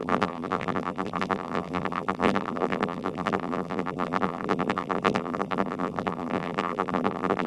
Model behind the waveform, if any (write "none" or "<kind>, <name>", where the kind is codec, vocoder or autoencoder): vocoder, BigVGAN v2